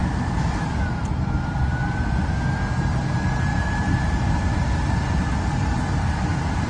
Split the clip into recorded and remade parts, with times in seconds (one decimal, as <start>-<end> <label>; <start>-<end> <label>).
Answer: 0.0-2.2 remade; 2.2-3.5 recorded; 3.5-6.7 remade